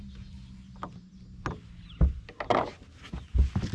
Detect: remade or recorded recorded